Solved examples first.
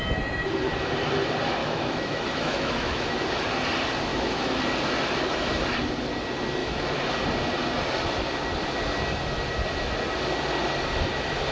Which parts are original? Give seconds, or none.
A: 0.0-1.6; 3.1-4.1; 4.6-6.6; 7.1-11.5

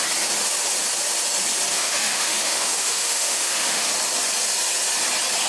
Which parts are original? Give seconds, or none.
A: 0.0-1.7; 3.9-5.5

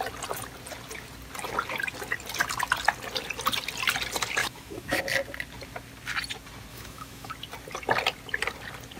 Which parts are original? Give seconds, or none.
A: 0.0-4.4; 5.0-6.7; 7.3-9.0

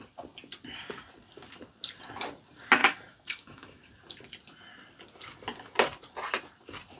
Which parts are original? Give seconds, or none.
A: 0.0-2.8; 3.9-7.0

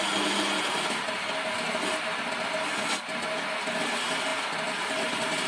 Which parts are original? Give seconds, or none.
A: 0.0-5.5

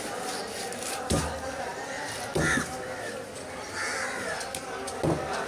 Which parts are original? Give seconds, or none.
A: 0.0-5.5

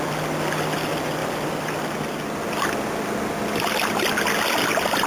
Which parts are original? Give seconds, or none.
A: 0.0-5.1

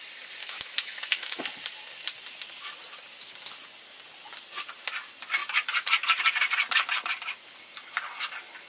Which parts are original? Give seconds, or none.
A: 0.0-0.4; 1.4-8.7